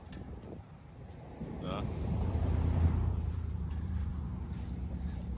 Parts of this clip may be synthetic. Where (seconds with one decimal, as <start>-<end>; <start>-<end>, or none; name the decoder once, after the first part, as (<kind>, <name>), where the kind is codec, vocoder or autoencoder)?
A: 0.0-4.1 (vocoder, BigVGAN v2); 4.9-5.4